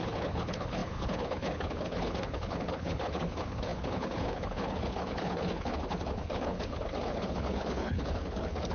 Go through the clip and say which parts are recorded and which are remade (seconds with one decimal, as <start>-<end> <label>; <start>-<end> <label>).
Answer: 0.0-8.7 remade